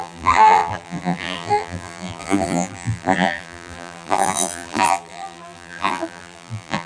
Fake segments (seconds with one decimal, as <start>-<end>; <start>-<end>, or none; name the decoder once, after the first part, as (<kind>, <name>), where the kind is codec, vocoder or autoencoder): 0.0-6.9 (vocoder, BigVGAN v2)